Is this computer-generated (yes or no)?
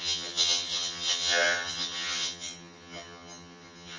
yes